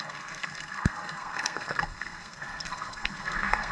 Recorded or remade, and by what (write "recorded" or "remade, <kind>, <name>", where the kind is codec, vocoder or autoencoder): remade, codec, SNAC